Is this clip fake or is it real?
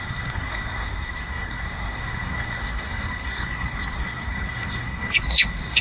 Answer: fake